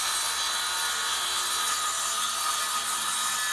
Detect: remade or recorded recorded